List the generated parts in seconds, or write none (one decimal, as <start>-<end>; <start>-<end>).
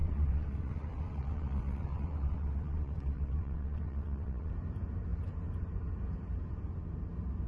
0.0-4.5